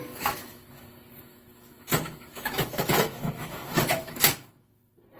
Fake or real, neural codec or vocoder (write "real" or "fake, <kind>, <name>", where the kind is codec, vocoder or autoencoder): fake, autoencoder, DAC-VAE